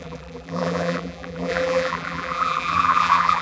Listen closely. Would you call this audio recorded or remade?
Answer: remade